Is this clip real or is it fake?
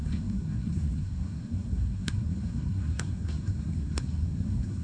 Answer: fake